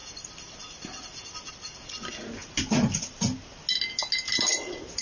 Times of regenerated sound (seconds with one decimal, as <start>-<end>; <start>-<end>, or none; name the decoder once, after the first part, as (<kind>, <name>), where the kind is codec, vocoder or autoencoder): none